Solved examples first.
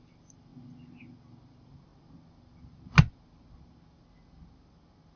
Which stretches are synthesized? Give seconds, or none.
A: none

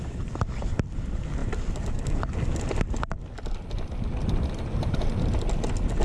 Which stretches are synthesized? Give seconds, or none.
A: none

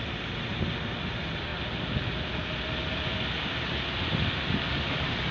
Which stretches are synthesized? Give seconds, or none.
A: none

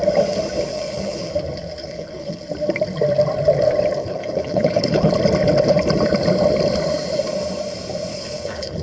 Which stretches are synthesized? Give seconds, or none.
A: 0.7-1.3 (codec, HILCodec); 1.8-2.4; 4.0-5.1; 8.1-8.8

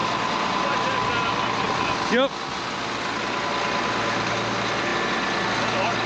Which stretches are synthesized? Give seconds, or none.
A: none